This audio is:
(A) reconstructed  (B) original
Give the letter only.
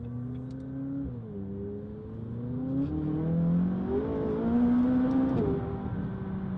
B